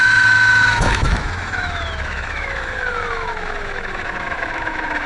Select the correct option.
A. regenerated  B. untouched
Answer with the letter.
A